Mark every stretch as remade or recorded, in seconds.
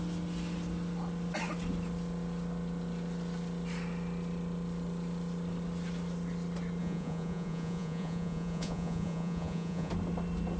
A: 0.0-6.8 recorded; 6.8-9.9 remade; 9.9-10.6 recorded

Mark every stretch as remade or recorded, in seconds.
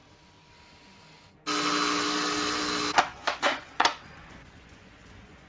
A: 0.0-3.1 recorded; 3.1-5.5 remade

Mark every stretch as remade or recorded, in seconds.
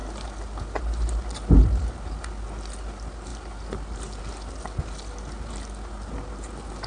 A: 0.0-6.9 recorded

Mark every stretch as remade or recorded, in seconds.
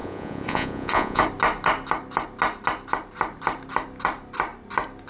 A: 0.0-1.2 remade; 1.2-5.1 recorded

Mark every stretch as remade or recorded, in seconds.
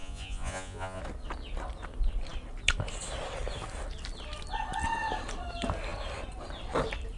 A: 0.0-1.0 remade; 1.0-7.2 recorded